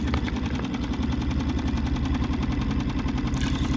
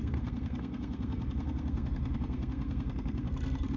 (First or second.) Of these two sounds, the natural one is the first